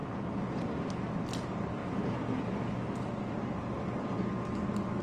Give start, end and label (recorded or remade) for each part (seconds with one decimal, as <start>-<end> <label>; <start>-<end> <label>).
0.0-5.0 recorded